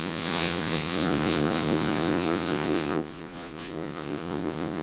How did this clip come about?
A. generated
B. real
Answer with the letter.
A